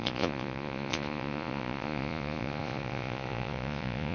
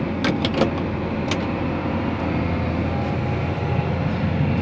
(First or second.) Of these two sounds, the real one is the second